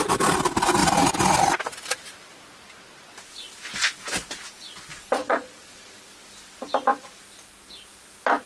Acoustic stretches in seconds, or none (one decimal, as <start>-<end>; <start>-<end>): 0.0-4.9; 6.0-8.5